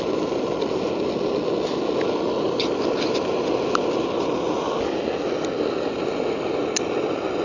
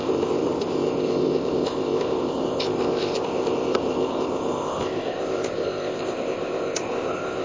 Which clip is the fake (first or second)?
second